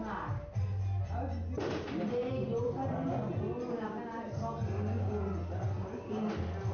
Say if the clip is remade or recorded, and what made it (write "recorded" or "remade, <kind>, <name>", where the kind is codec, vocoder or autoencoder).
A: recorded